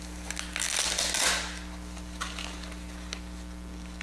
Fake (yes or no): no